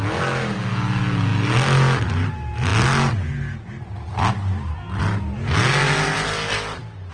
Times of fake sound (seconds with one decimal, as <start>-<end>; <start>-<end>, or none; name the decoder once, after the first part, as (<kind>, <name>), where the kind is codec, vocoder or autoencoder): none